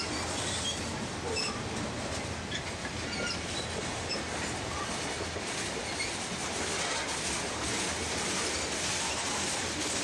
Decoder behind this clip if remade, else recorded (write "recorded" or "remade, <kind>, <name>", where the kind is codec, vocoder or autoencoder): recorded